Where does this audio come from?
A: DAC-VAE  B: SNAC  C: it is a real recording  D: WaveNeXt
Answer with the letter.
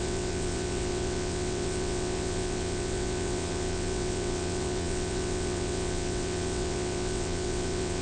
D